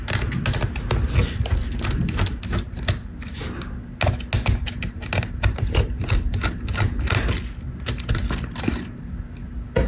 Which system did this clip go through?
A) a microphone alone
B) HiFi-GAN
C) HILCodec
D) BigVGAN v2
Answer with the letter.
A